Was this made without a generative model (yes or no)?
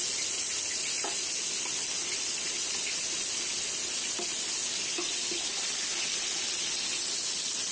yes